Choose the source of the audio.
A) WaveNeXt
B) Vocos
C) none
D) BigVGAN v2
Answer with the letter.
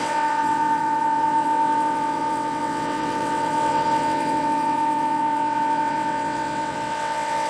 A